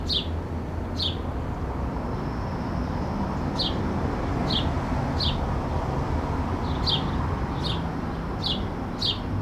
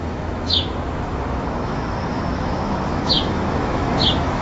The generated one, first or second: second